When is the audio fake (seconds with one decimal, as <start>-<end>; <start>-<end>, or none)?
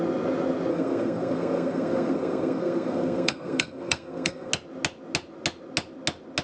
0.7-4.5